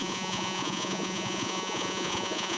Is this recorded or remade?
remade